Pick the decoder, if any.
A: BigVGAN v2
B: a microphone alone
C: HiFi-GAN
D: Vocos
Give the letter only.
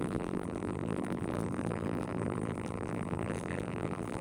A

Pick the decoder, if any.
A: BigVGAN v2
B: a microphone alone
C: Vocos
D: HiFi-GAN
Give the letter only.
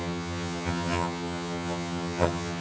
D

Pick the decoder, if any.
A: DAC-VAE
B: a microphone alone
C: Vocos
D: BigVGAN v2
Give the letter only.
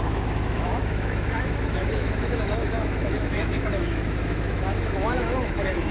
A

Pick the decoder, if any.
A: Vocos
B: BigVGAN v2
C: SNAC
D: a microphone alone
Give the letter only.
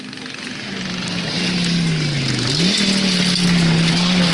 D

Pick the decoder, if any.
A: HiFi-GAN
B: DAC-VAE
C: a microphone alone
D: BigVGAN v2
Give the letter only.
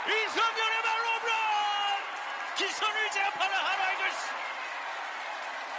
C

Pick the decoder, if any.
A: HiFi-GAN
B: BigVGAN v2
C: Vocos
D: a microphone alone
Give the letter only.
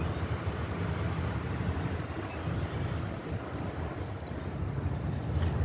D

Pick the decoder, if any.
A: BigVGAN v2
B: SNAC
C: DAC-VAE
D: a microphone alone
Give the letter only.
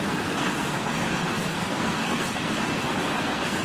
B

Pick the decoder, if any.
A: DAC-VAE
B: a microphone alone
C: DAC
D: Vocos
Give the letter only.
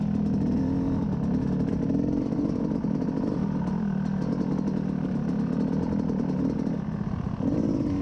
B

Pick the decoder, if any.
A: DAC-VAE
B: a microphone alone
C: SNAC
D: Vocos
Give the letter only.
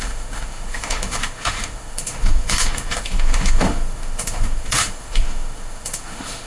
A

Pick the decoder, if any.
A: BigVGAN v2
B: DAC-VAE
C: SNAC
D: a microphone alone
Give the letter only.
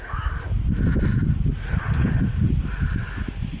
D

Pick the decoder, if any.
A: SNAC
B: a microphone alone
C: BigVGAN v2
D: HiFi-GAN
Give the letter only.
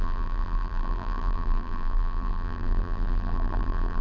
C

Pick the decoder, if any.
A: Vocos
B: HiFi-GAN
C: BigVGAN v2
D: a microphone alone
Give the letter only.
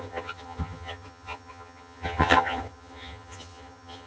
B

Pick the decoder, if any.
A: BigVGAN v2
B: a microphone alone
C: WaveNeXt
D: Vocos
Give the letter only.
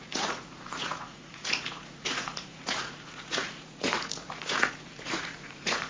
D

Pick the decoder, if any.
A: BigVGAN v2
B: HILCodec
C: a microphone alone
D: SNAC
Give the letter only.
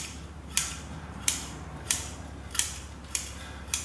A